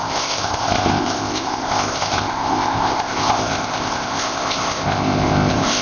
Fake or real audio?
fake